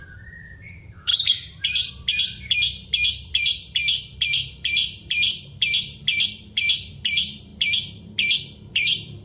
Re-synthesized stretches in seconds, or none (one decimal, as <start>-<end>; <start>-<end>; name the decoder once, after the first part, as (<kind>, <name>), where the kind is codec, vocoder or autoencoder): 0.0-3.8 (vocoder, BigVGAN v2); 4.5-7.5; 8.7-9.2